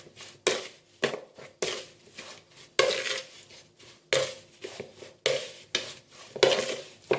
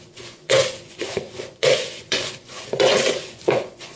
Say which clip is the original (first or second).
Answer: first